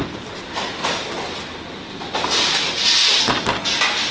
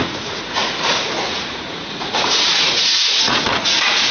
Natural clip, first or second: first